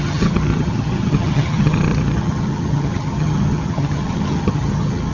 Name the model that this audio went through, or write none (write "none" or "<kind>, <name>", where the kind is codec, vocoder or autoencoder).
vocoder, HiFi-GAN